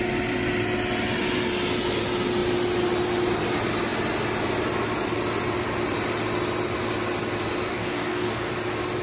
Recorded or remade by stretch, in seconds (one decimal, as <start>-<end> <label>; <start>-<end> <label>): 0.0-7.7 recorded; 7.7-8.5 remade; 8.5-9.0 recorded